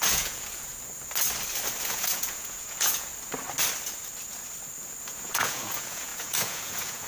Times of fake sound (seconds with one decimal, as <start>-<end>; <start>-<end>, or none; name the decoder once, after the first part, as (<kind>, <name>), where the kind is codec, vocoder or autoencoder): 0.0-0.7 (vocoder, Vocos); 1.8-3.1; 5.0-7.1